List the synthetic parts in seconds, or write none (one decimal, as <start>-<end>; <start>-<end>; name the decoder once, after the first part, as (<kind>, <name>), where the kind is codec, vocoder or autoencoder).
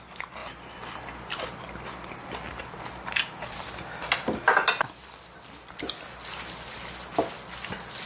none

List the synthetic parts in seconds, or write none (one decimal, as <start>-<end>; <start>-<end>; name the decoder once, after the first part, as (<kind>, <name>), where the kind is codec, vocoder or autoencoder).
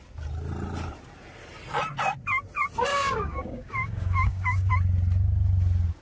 2.9-4.7 (codec, DAC)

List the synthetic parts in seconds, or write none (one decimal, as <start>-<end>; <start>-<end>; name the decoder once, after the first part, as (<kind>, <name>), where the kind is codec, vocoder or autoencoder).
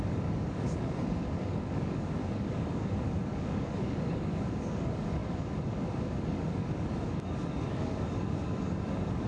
0.0-9.3 (codec, DAC)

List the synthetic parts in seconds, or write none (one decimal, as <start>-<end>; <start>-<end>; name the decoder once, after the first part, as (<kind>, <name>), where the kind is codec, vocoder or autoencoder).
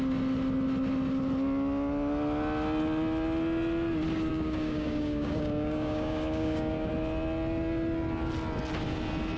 4.3-6.9 (codec, DAC)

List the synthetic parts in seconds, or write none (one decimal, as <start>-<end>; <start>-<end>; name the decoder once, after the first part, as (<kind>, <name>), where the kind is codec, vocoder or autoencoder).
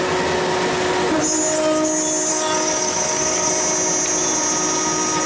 2.3-3.5 (codec, DAC)